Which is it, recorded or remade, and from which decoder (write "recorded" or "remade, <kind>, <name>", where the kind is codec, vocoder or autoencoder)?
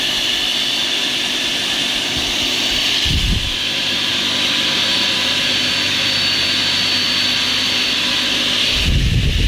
recorded